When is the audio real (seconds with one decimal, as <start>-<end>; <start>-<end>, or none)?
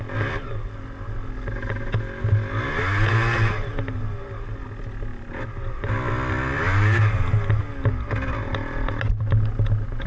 0.0-5.1; 5.9-10.1